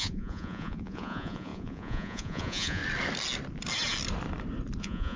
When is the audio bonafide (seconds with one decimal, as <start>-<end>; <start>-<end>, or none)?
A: 2.8-4.8